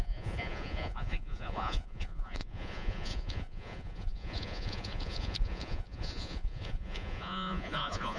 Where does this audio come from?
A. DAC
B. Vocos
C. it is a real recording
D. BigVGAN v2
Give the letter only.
B